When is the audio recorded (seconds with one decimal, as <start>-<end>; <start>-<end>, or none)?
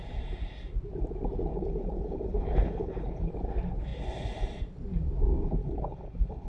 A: 0.0-1.5; 3.3-5.6